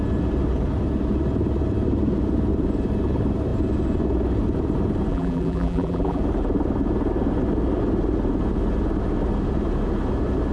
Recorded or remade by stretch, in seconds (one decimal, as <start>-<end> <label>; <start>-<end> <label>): 0.0-5.1 recorded; 5.1-6.2 remade; 6.2-10.5 recorded